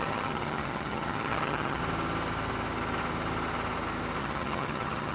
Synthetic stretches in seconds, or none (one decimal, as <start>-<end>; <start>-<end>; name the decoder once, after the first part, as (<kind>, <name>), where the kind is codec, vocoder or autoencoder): 0.0-1.8 (vocoder, HiFi-GAN); 4.2-5.1